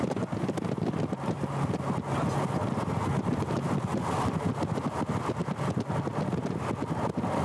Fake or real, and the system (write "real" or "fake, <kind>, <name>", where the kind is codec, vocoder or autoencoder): real